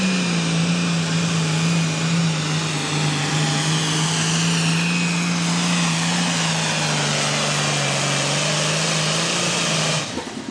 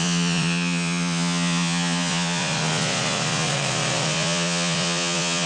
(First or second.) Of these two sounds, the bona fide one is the first